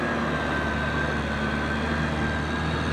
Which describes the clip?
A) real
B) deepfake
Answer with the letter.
A